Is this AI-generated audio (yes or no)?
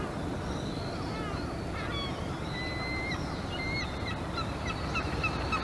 no